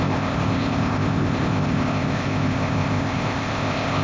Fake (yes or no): yes